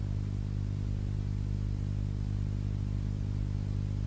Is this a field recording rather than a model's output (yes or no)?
yes